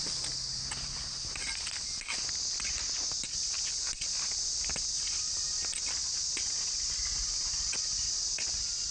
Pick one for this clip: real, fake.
real